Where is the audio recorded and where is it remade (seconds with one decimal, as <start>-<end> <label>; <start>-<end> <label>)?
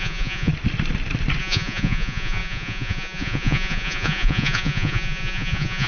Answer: 0.0-0.5 remade; 0.5-1.4 recorded; 1.4-5.9 remade